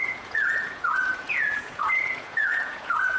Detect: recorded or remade remade